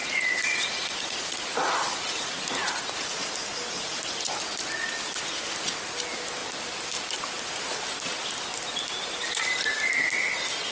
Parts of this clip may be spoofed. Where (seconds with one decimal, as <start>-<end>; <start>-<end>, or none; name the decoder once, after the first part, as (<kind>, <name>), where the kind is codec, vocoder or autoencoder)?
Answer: 0.0-2.8 (vocoder, Vocos)

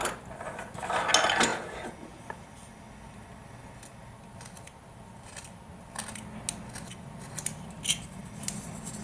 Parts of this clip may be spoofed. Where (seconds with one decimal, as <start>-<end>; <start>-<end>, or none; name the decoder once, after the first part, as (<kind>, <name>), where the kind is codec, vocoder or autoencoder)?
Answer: 1.5-2.2 (vocoder, Vocos)

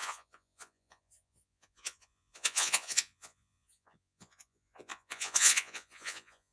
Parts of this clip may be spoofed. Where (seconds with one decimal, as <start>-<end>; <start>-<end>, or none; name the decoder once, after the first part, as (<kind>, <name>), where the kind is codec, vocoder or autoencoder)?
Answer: 0.0-6.5 (vocoder, Vocos)

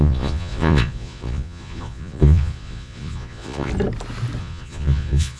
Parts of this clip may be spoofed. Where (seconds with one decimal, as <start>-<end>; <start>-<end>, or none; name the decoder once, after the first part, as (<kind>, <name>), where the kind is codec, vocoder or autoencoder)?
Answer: 0.0-3.7 (vocoder, Vocos); 4.4-5.4

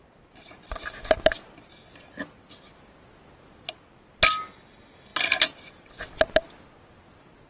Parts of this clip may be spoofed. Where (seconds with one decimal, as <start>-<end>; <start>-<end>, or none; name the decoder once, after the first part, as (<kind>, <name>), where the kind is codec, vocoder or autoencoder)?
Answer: none